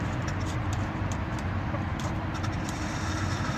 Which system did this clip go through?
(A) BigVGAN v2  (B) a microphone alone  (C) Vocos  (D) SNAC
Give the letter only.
A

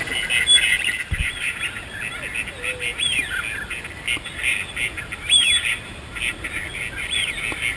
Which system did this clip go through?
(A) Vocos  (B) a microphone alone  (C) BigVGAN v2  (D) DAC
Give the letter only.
B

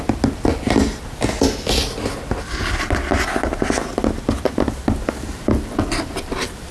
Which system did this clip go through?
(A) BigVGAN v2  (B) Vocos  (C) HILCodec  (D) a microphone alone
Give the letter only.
D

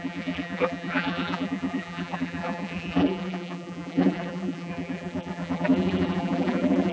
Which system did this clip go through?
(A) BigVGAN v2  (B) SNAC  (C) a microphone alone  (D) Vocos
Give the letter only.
A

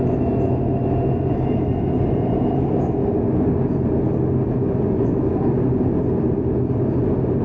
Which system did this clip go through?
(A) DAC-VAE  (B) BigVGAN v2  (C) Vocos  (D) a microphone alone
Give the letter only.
D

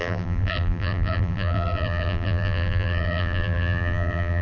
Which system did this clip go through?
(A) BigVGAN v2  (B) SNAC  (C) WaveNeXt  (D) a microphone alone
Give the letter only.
A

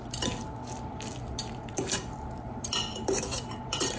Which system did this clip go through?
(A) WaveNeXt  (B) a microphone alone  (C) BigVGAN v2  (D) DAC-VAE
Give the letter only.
C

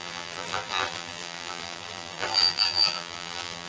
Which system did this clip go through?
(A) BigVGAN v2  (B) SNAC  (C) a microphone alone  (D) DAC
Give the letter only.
A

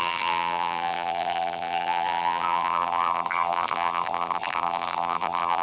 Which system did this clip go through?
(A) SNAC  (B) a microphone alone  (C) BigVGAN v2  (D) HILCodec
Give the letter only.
C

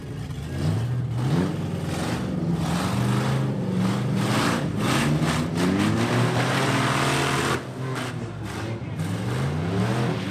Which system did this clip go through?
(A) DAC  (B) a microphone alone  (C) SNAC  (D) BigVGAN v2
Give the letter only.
B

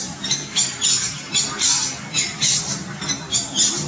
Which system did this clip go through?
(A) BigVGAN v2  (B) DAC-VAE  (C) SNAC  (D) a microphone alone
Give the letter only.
A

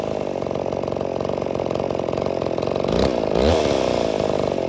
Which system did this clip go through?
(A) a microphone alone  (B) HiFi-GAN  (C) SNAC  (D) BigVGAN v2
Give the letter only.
D